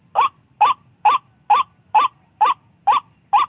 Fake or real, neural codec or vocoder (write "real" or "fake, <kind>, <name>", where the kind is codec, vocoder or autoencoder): real